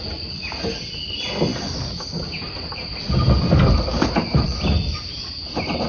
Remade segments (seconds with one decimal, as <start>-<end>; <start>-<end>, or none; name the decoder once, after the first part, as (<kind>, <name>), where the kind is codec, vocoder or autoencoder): none